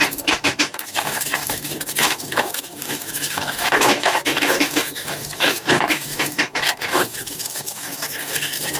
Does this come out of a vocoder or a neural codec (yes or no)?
yes